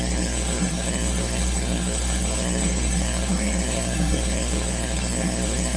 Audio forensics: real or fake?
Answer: fake